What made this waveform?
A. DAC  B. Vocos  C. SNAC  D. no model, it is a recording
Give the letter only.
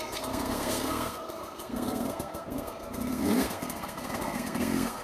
C